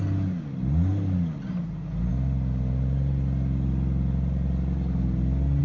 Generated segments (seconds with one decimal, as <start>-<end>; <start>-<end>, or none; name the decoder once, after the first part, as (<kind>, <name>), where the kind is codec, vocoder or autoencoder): none